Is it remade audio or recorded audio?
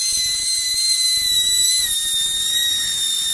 remade